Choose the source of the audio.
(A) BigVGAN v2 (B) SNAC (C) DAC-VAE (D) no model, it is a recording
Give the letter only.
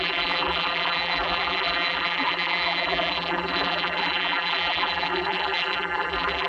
A